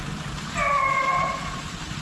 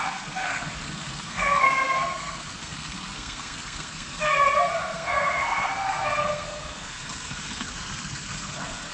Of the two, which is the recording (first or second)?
first